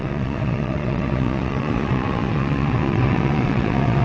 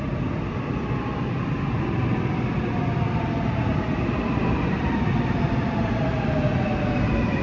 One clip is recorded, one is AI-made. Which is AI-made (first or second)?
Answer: first